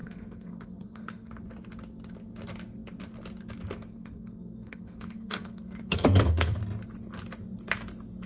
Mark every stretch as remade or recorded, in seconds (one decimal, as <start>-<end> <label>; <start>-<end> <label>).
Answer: 0.0-1.3 remade; 1.3-3.9 recorded; 3.9-6.6 remade; 6.6-8.3 recorded